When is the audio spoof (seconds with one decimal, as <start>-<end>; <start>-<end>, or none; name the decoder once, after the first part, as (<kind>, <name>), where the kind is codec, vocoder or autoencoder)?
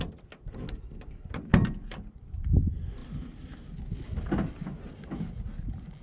none